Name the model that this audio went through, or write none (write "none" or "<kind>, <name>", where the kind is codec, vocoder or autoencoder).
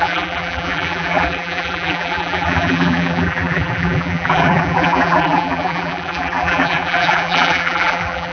vocoder, BigVGAN v2